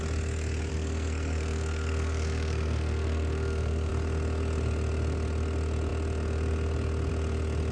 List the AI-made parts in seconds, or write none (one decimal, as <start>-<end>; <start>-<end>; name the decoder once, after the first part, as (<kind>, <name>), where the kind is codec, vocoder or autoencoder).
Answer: 0.7-3.9 (codec, SNAC)

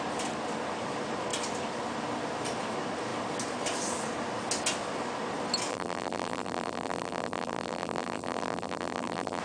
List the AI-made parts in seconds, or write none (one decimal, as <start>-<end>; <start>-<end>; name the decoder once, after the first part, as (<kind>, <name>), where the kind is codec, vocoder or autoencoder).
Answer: 5.7-9.4 (vocoder, BigVGAN v2)

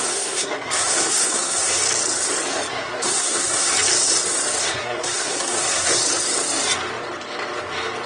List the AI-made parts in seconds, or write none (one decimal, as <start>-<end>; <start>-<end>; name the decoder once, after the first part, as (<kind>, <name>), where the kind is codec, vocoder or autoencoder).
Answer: 0.0-1.8 (codec, SNAC); 2.7-3.7; 4.6-6.0

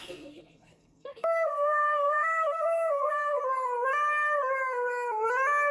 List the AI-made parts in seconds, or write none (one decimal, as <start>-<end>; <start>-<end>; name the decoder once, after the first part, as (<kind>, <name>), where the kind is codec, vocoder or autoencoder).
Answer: 0.0-3.4 (codec, SNAC)

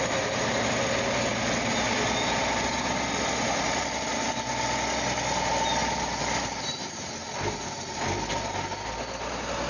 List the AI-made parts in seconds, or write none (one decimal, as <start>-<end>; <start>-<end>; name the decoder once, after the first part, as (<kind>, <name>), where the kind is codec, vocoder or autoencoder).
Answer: 5.8-7.1 (vocoder, BigVGAN v2)

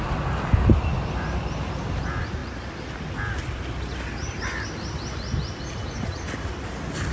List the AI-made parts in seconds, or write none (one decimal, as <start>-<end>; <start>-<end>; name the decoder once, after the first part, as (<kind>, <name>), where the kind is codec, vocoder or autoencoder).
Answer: none

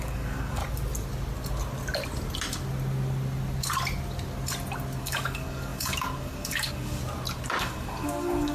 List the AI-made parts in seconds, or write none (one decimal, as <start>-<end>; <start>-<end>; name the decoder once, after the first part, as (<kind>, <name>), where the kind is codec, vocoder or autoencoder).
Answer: 0.0-0.6 (codec, DAC); 5.0-7.0; 7.6-8.5